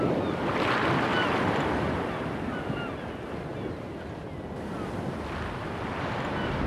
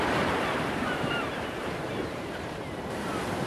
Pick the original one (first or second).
first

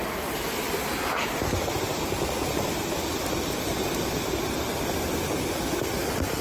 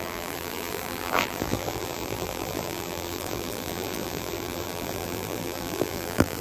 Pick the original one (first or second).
first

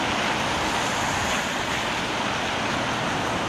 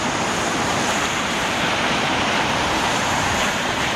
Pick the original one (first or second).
first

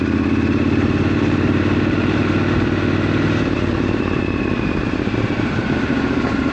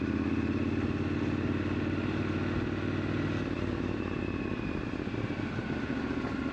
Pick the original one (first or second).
second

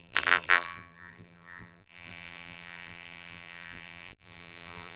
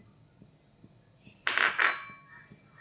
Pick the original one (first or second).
second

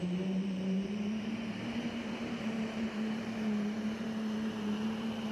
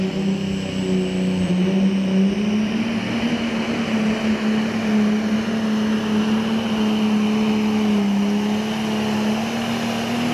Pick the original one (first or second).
second